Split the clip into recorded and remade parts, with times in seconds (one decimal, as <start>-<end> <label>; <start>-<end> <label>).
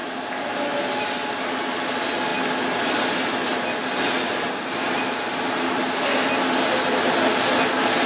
0.0-8.1 recorded